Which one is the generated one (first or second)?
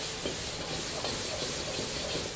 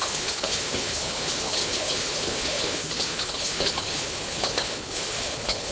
second